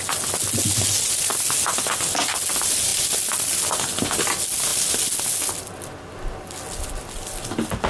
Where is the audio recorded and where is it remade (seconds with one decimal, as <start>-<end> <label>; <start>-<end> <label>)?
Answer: 0.0-7.9 recorded